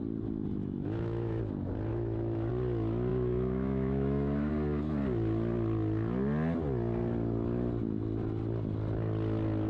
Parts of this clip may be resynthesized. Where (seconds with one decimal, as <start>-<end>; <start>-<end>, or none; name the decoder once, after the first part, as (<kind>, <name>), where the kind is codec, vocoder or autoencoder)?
0.6-1.4 (autoencoder, DAC-VAE); 1.9-2.5; 3.1-4.5